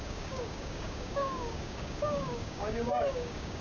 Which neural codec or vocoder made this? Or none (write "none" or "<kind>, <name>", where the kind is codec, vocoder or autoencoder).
codec, DAC